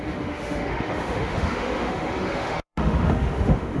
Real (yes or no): no